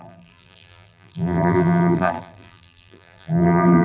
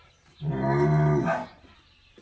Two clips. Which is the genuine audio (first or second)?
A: second